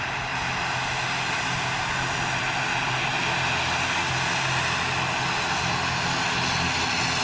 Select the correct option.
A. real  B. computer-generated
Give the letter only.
A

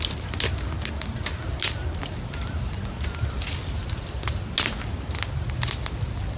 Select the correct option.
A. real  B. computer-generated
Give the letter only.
A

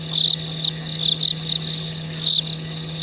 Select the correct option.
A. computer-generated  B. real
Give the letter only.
B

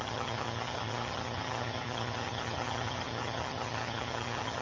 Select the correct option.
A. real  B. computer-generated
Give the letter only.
B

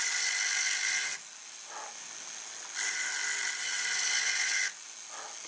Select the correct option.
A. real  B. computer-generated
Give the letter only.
A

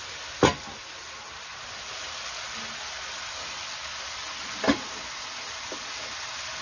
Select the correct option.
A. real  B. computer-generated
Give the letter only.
A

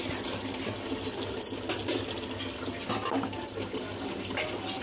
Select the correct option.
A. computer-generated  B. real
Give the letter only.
B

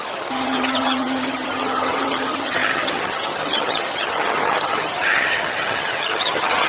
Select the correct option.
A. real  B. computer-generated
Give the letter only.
B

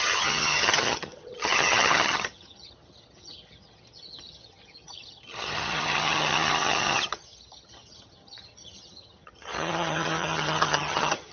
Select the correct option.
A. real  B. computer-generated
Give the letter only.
B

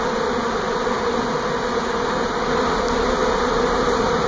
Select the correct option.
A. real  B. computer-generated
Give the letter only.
A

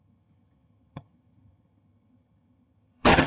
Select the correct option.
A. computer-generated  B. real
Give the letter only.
A